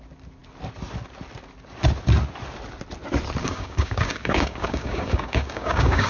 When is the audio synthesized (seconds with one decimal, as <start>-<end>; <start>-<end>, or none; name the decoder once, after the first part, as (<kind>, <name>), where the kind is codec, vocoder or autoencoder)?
3.4-6.1 (codec, DAC)